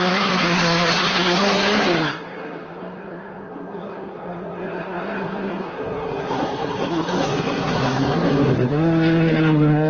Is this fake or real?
fake